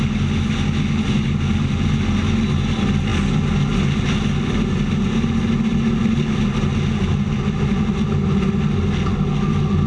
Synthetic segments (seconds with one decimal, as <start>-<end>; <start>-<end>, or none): none